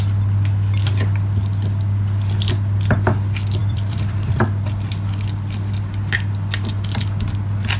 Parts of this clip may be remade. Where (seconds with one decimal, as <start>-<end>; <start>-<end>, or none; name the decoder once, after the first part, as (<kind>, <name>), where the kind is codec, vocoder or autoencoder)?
3.6-4.4 (vocoder, BigVGAN v2)